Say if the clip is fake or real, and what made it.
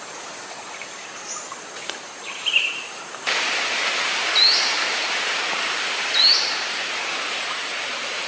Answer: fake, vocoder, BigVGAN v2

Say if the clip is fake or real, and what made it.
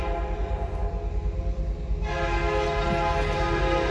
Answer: real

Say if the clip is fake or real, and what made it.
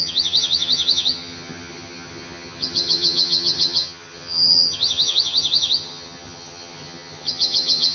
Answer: fake, vocoder, HiFi-GAN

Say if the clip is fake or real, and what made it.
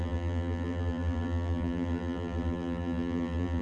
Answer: fake, vocoder, BigVGAN v2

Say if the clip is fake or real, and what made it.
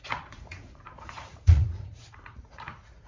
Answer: fake, vocoder, Vocos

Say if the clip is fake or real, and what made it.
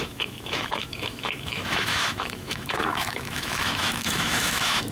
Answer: fake, autoencoder, DAC-VAE